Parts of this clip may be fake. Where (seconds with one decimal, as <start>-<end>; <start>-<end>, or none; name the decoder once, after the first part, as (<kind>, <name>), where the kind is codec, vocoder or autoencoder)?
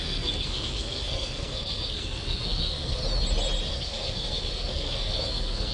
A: 0.0-3.0 (codec, SNAC); 3.7-5.7